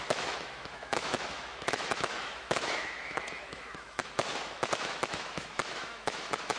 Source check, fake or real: fake